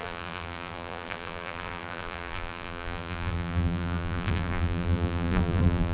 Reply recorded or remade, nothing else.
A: remade